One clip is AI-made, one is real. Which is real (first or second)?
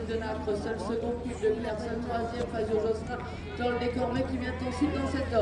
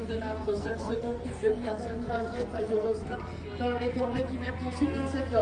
first